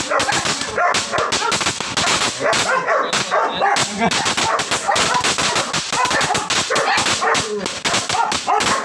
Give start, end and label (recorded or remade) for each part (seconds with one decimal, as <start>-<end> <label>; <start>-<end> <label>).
0.0-8.8 recorded